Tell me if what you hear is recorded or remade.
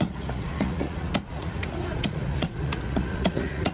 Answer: remade